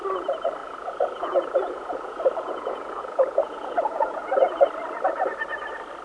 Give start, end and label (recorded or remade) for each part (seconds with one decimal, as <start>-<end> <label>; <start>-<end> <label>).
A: 0.0-0.6 recorded; 0.6-4.2 remade; 4.2-6.0 recorded